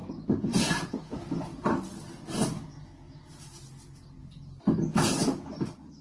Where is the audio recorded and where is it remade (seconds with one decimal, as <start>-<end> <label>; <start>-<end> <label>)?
0.0-0.6 remade; 0.6-4.2 recorded; 4.2-4.8 remade; 4.8-6.0 recorded